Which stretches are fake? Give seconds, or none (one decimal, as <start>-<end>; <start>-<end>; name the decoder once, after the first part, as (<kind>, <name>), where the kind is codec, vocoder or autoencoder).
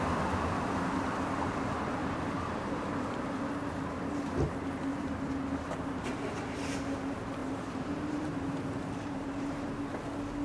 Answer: 2.0-3.3 (vocoder, BigVGAN v2); 4.9-6.1; 7.4-9.8